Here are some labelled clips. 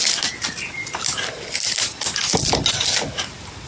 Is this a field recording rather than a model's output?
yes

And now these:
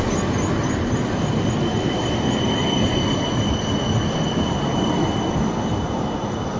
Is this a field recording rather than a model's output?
yes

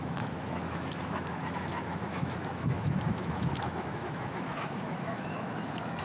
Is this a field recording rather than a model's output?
no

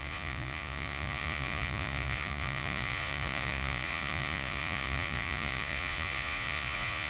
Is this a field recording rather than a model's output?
no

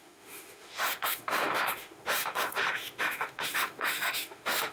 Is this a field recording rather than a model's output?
no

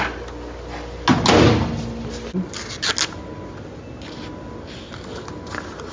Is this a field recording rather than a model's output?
yes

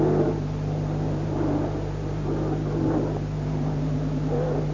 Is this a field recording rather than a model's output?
yes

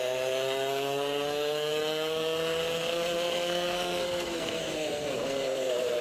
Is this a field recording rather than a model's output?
no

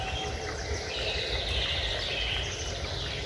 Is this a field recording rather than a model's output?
yes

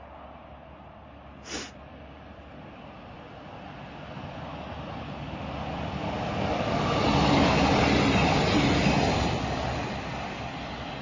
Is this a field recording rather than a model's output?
yes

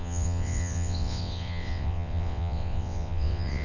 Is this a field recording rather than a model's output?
no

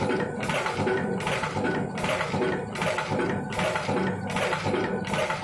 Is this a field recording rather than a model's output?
yes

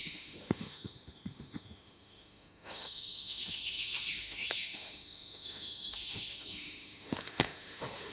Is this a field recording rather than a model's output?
no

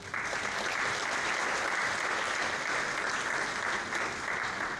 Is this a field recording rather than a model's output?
yes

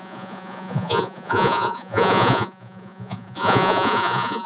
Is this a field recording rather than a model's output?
no